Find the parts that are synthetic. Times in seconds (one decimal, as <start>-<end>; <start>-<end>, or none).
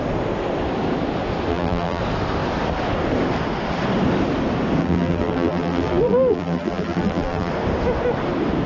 1.5-2.0; 4.8-7.5